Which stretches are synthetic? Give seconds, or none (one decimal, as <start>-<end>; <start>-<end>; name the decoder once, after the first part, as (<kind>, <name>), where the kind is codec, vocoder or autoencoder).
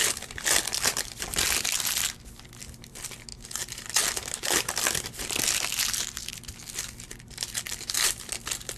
none